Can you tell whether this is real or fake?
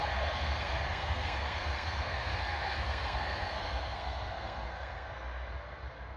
fake